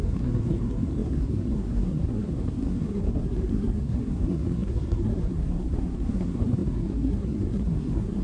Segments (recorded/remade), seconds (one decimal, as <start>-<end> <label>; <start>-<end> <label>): 0.0-8.2 remade